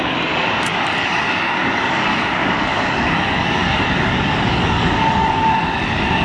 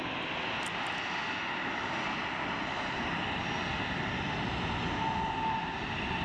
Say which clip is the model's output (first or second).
first